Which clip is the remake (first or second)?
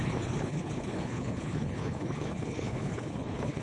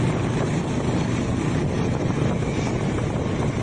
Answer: first